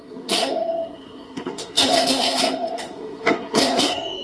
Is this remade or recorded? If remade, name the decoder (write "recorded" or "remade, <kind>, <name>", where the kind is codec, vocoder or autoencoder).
remade, codec, SNAC